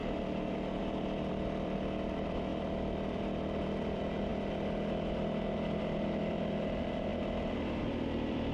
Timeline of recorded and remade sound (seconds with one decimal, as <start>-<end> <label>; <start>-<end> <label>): 0.0-0.8 recorded; 0.8-4.3 remade; 4.3-5.8 recorded; 5.8-7.1 remade; 7.1-7.8 recorded; 7.8-8.5 remade